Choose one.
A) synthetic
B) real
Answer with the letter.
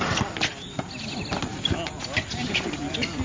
B